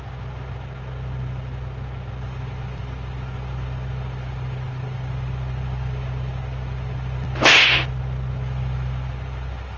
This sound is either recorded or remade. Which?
recorded